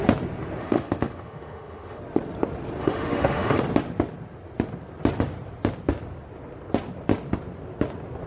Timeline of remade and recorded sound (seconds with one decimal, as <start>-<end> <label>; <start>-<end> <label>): 0.0-0.6 recorded; 0.6-2.0 remade; 2.0-2.8 recorded; 2.8-3.6 remade; 3.6-8.3 recorded